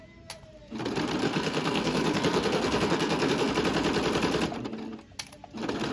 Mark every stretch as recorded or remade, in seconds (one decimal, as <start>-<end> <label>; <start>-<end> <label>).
0.0-1.2 recorded; 1.2-3.5 remade; 3.5-5.9 recorded